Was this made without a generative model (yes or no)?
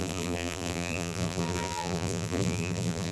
no